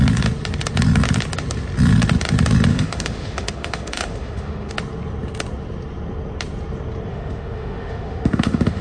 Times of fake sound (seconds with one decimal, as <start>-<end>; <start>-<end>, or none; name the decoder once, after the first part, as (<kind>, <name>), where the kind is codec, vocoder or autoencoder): 2.7-4.7 (autoencoder, DAC-VAE); 7.1-8.8

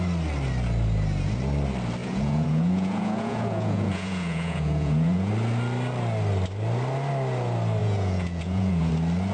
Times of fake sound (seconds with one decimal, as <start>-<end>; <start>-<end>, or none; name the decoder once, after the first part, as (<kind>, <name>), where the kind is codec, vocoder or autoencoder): 2.0-5.3 (vocoder, Vocos); 7.8-8.9

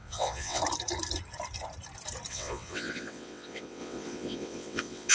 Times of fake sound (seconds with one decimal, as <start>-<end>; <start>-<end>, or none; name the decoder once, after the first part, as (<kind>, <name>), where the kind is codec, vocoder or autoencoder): 0.0-0.6 (vocoder, WaveNeXt); 2.3-5.1

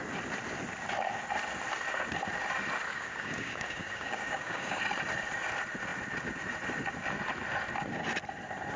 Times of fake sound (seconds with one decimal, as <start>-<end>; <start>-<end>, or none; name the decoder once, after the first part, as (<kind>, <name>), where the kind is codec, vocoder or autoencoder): 2.9-4.8 (codec, DAC)

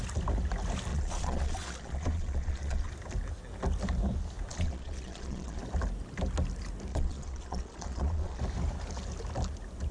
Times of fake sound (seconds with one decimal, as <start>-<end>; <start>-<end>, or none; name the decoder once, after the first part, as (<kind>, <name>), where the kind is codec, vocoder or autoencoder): 0.9-2.9 (vocoder, Vocos); 4.5-5.6; 6.9-8.4